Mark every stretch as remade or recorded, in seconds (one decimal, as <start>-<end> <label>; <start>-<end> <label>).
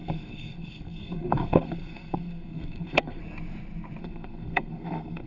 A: 0.0-3.2 remade; 3.2-4.0 recorded; 4.0-5.3 remade